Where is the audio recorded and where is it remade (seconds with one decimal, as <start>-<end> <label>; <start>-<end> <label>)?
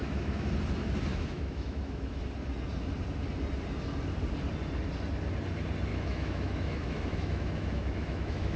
0.0-0.5 remade; 0.5-1.1 recorded; 1.1-2.2 remade; 2.2-5.9 recorded; 5.9-8.6 remade